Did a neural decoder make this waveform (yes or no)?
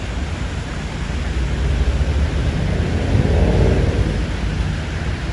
no